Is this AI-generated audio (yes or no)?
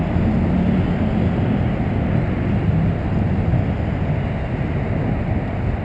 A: no